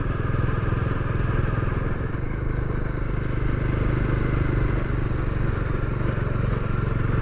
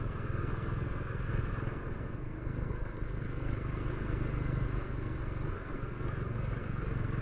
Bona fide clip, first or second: first